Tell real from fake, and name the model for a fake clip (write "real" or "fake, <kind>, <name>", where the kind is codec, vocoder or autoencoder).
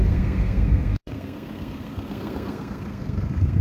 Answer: fake, codec, SNAC